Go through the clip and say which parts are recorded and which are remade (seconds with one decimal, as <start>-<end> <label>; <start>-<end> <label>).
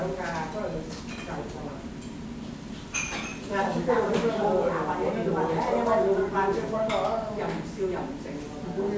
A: 0.0-9.0 recorded